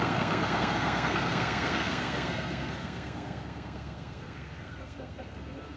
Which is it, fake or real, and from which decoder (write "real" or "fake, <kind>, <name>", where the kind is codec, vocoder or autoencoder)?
fake, codec, SNAC